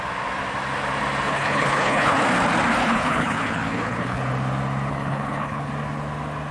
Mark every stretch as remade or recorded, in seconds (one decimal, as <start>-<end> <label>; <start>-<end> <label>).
0.0-1.3 recorded; 1.3-2.2 remade; 2.2-2.8 recorded; 2.8-4.2 remade; 4.2-4.9 recorded; 4.9-5.7 remade; 5.7-6.5 recorded

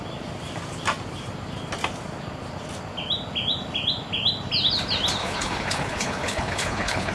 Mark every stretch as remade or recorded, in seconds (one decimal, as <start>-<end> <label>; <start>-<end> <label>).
0.0-5.2 recorded; 5.2-7.1 remade